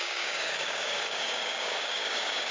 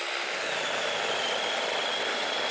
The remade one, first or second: first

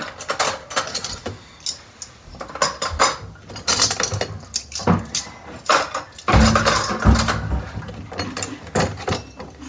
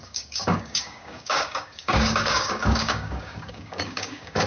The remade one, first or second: second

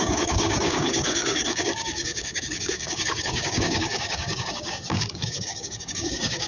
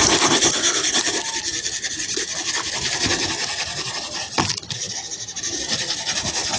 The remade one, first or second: first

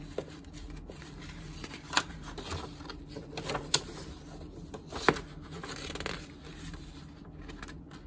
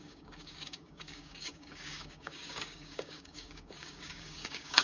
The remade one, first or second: second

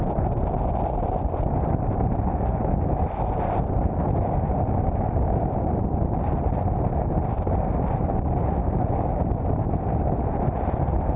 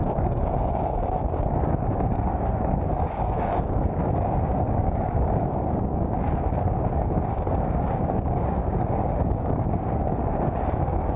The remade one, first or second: second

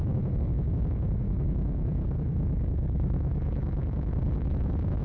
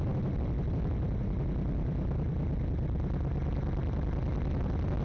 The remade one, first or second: first